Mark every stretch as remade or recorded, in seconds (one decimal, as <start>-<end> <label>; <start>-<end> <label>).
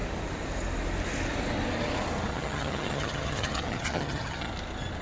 0.0-2.3 recorded; 2.3-4.5 remade; 4.5-5.0 recorded